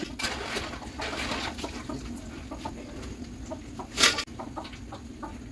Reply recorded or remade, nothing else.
recorded